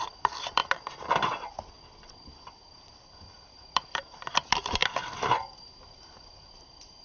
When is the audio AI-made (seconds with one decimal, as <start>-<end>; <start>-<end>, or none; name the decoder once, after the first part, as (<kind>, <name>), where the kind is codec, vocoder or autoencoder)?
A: 0.0-0.6 (vocoder, BigVGAN v2); 2.2-7.0